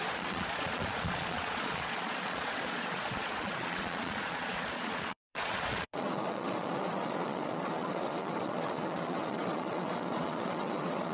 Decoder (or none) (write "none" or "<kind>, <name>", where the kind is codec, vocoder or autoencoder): vocoder, Vocos